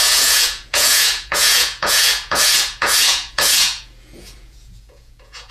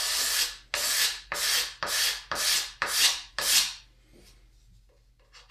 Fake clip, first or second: first